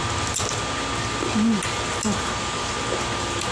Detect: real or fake real